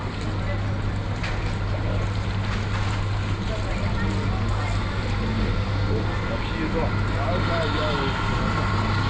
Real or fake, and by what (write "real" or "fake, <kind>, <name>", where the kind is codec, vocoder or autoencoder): real